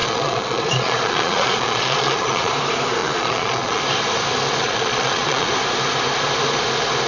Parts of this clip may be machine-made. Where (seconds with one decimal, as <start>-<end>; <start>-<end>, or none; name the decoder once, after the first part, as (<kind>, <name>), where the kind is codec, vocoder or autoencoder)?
0.0-2.5 (vocoder, Vocos); 3.0-3.8; 4.6-5.5